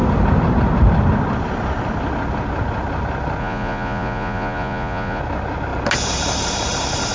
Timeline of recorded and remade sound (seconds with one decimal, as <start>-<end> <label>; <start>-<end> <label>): 0.0-3.4 recorded; 3.4-5.2 remade; 5.2-7.1 recorded

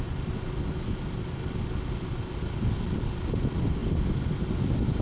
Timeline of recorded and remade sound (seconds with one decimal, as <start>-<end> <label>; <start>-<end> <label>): 0.0-5.0 recorded

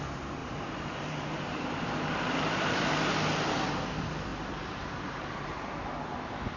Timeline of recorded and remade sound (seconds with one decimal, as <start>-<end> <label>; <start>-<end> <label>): 0.0-0.4 recorded; 0.4-3.1 remade; 3.1-4.3 recorded; 4.3-6.6 remade

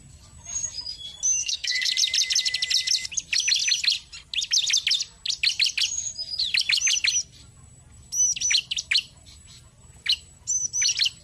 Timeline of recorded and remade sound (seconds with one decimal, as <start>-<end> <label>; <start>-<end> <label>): 0.0-1.4 recorded; 1.4-1.9 remade; 1.9-11.2 recorded

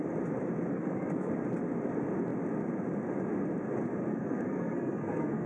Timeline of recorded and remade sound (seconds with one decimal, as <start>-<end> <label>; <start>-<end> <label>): 0.0-0.7 recorded; 0.7-1.3 remade; 1.3-4.1 recorded; 4.1-5.5 remade